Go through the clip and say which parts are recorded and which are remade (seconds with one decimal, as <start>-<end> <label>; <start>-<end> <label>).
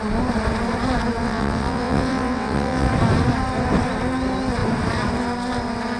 0.0-1.2 recorded; 1.2-2.9 remade; 2.9-6.0 recorded